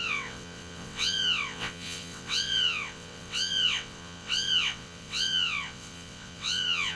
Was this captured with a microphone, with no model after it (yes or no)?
no